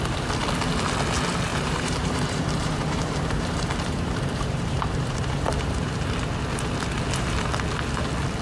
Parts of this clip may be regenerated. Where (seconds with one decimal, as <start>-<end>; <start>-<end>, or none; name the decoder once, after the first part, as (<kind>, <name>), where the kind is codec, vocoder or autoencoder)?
1.5-6.1 (vocoder, BigVGAN v2)